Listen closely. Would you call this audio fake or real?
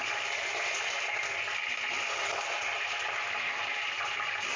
real